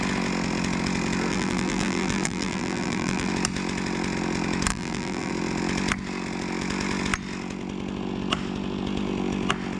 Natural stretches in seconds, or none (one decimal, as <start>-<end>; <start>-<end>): 0.0-1.3; 3.3-4.7; 5.3-9.8